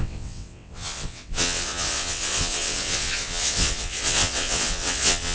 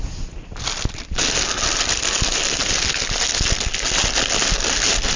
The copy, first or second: first